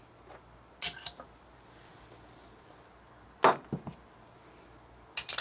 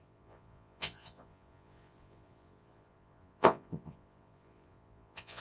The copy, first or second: second